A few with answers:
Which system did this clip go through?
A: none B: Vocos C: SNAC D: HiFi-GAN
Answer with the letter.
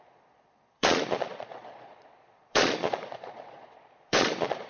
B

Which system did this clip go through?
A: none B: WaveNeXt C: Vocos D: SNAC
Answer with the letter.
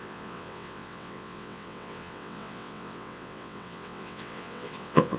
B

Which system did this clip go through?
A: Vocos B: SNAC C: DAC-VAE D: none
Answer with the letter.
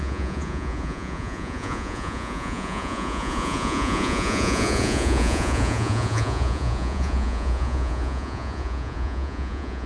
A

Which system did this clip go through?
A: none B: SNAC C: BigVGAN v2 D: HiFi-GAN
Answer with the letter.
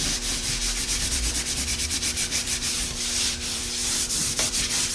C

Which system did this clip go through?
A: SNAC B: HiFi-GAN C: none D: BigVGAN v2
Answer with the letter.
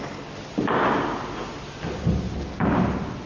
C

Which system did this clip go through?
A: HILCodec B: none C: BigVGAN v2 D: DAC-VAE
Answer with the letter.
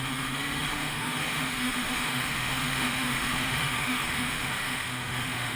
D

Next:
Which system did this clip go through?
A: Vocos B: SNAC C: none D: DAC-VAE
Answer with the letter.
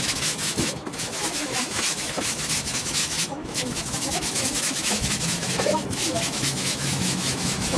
D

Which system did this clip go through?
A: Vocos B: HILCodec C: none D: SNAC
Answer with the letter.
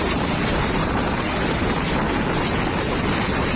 C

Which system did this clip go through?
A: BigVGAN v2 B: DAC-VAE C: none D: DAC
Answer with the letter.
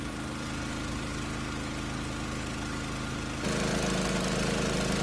C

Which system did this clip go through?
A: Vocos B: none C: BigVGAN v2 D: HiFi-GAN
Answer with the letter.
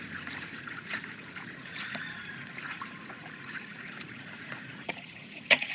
A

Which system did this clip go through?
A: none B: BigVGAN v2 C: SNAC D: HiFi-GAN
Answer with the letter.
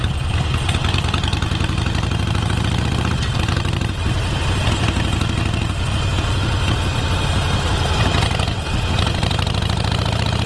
A